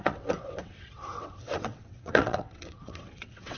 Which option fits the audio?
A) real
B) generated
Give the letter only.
B